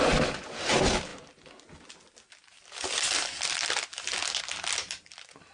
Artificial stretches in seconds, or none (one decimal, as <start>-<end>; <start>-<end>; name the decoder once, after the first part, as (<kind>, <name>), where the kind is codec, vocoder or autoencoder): none